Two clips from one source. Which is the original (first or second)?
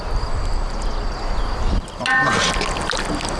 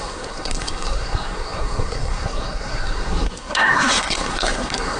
first